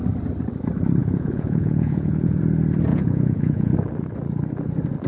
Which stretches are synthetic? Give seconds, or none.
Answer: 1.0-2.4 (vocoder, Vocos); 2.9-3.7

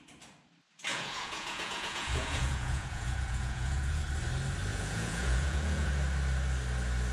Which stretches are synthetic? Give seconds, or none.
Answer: 0.9-4.0 (vocoder, Vocos); 4.7-5.9

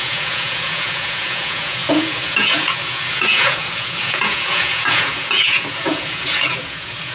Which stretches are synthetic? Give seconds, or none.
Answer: 0.0-7.1 (vocoder, Vocos)

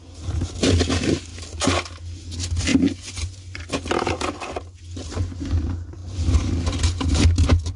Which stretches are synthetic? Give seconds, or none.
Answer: 2.7-3.6 (vocoder, Vocos)

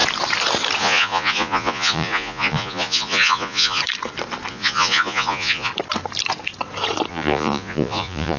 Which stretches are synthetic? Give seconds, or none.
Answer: 0.8-3.8 (vocoder, Vocos); 4.5-5.7; 7.1-8.4